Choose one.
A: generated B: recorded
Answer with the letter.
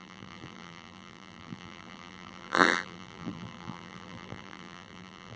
A